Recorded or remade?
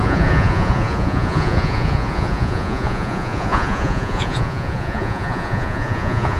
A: remade